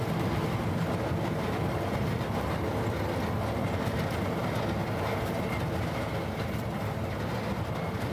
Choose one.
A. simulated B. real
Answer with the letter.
B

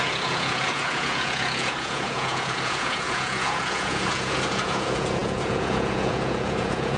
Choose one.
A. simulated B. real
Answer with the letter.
A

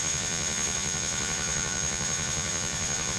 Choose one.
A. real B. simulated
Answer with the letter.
B